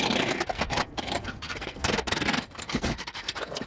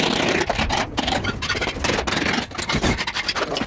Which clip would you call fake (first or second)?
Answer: first